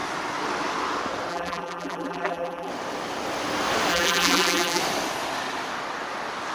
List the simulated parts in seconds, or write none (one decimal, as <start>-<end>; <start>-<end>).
1.3-2.7; 3.9-4.8